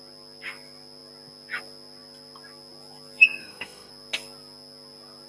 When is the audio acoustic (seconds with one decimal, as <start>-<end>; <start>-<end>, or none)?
0.0-3.4; 3.9-5.3